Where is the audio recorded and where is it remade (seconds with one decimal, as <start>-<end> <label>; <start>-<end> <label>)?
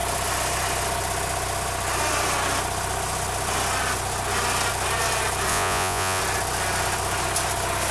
0.0-5.5 recorded; 5.5-6.2 remade; 6.2-7.9 recorded